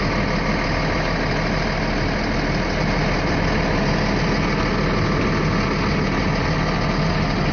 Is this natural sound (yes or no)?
yes